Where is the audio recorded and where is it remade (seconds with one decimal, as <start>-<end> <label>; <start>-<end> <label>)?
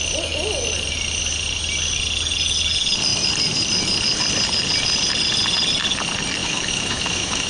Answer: 0.0-6.4 recorded; 6.4-7.5 remade